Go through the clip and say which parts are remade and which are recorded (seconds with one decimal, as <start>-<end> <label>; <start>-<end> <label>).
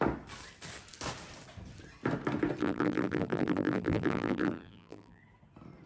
0.0-2.6 recorded; 2.6-5.2 remade; 5.2-5.9 recorded